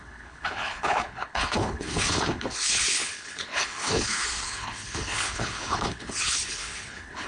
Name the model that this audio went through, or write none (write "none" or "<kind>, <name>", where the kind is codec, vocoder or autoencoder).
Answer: codec, HILCodec